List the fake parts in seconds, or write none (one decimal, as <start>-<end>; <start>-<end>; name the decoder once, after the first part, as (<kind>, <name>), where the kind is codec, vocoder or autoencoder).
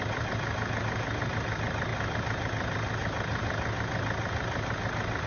none